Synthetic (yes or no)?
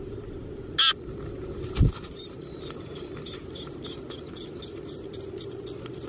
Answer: no